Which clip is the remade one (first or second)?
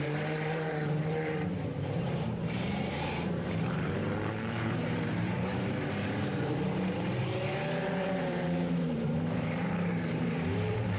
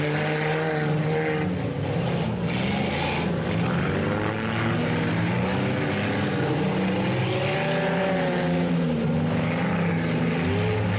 first